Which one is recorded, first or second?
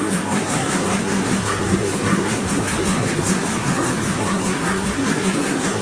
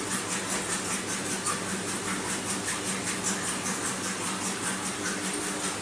second